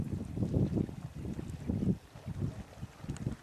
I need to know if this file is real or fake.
fake